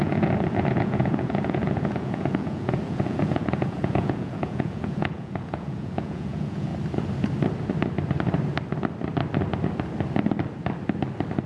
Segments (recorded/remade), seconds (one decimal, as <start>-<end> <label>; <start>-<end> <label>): 0.0-6.7 remade; 6.7-11.5 recorded